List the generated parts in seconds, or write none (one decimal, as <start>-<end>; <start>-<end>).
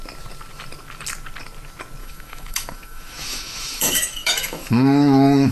2.0-5.5